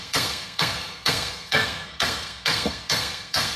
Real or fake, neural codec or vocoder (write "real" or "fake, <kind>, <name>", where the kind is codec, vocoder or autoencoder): fake, codec, SNAC